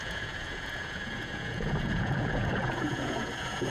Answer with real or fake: fake